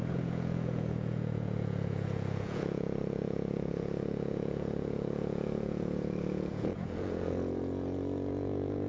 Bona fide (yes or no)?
no